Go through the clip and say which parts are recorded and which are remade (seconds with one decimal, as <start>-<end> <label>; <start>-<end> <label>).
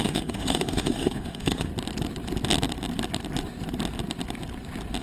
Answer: 0.0-1.7 remade; 1.7-5.0 recorded